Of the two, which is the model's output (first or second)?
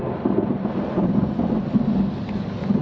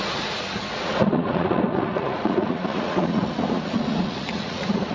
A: second